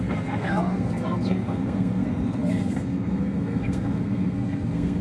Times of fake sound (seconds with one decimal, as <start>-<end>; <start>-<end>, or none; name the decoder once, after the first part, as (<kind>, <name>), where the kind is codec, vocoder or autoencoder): 0.0-5.0 (codec, SNAC)